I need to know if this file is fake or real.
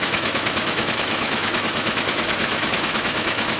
fake